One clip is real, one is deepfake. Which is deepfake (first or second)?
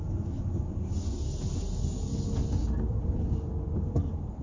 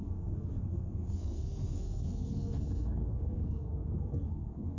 second